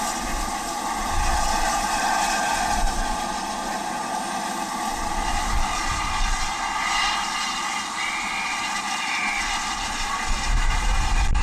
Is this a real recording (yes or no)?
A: yes